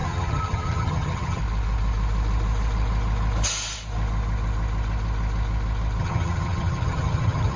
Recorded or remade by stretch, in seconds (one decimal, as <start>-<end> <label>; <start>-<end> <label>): 0.0-1.4 remade; 1.4-6.0 recorded; 6.0-7.6 remade